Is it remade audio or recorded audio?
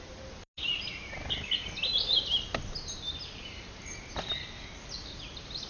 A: recorded